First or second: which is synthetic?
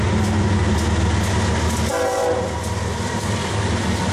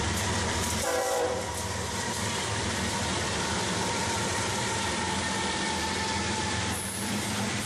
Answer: second